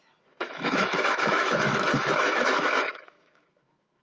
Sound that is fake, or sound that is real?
fake